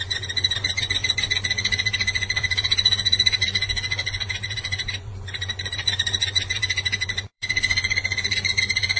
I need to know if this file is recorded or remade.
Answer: remade